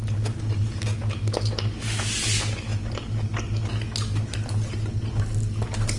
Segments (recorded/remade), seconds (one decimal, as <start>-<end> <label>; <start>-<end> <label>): 0.0-6.0 recorded